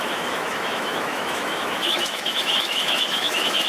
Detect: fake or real fake